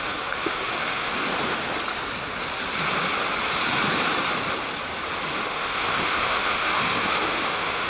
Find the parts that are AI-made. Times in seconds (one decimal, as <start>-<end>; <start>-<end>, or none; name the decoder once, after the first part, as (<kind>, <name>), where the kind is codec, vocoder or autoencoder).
0.0-1.1 (autoencoder, DAC-VAE); 5.3-7.9